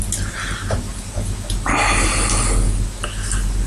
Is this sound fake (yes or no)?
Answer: no